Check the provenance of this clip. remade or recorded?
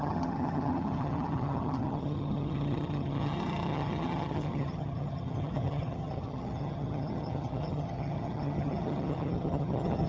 remade